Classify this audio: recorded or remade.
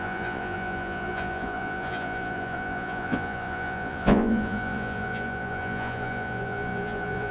remade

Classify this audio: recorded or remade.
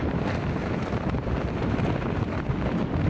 recorded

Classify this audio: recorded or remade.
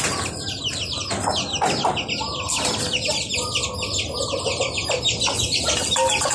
recorded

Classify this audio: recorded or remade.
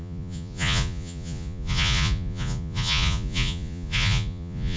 remade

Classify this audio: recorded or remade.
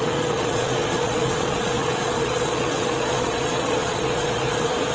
remade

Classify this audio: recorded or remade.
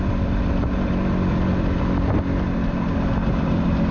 recorded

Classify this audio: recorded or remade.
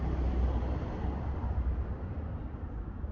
recorded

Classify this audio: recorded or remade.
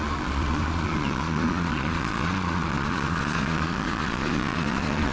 remade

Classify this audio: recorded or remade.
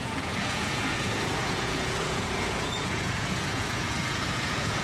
remade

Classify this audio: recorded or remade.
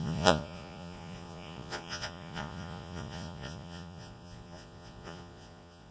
remade